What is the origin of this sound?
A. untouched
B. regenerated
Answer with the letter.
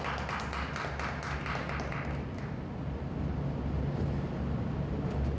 A